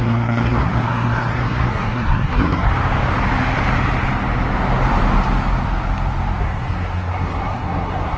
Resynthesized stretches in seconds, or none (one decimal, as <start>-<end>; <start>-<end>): 0.0-2.7; 6.4-8.2